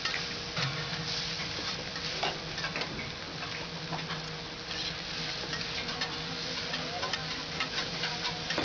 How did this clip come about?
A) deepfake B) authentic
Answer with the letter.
B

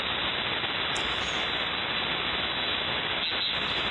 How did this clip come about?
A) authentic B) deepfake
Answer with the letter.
A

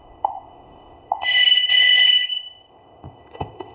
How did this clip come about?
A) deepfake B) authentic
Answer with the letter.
A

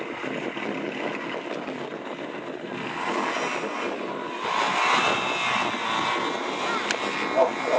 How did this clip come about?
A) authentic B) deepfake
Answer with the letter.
A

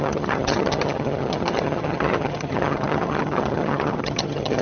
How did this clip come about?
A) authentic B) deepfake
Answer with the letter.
B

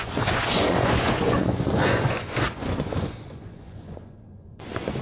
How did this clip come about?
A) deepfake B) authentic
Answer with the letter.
A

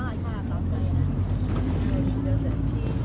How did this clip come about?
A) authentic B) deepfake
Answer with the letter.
A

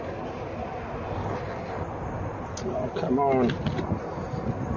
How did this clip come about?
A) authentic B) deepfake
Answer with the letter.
A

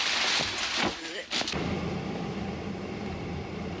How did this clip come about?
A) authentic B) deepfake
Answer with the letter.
A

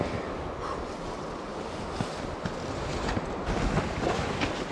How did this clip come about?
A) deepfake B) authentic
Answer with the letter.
B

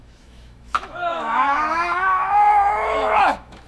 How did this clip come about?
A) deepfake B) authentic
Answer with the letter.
A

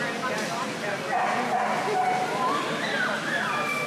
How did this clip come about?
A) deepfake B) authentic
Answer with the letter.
B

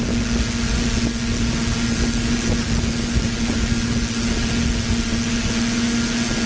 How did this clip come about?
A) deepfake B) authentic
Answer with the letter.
B